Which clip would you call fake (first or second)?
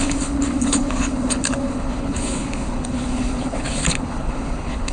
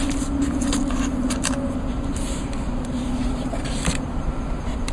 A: first